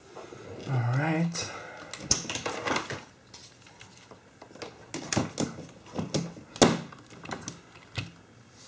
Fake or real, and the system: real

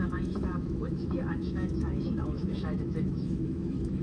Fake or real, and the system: fake, autoencoder, DAC-VAE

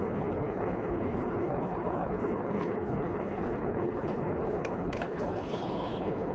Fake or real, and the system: fake, codec, HILCodec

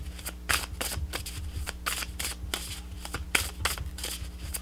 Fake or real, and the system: real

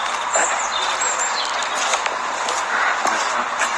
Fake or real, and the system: real